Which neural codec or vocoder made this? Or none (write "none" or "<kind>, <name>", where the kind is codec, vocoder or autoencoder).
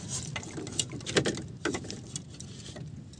none